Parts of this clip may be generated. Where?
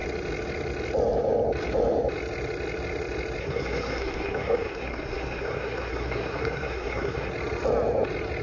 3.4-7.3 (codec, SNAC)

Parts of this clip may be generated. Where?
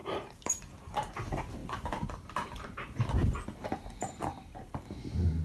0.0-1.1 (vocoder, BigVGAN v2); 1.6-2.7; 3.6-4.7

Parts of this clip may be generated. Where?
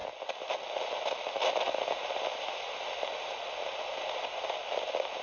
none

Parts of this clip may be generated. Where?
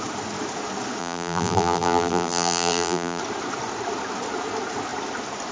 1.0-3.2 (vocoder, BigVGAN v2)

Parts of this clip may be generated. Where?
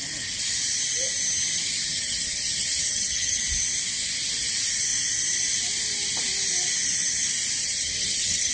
1.9-3.4 (vocoder, HiFi-GAN); 7.6-8.5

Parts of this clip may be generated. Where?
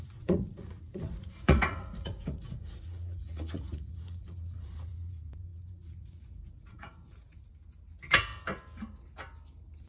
0.0-7.5 (vocoder, Vocos)